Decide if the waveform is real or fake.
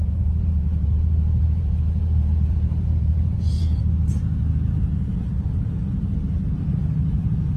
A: fake